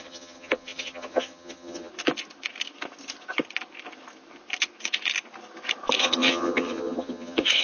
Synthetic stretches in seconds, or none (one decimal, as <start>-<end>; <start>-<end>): 0.0-1.9; 6.0-7.6